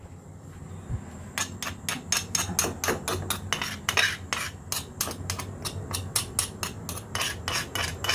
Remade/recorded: recorded